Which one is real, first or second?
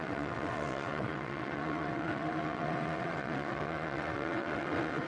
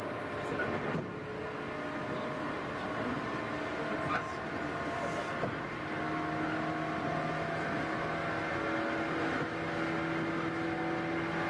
second